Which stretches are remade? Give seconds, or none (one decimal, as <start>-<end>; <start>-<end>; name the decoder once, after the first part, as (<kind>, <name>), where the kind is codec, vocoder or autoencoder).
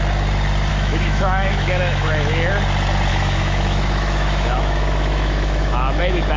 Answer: 0.7-2.5 (autoencoder, DAC-VAE); 3.1-6.4